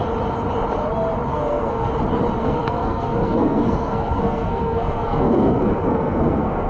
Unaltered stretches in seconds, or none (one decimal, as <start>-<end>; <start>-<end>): 0.0-1.3; 1.9-2.4